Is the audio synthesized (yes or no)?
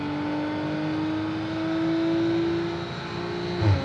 no